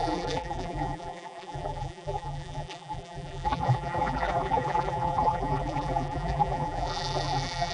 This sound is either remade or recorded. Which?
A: remade